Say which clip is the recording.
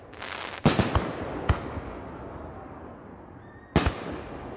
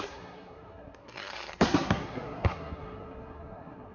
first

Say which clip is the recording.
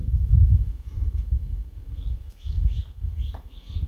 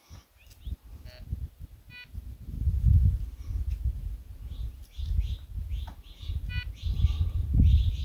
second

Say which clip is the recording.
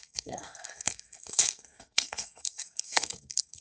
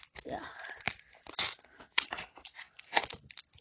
second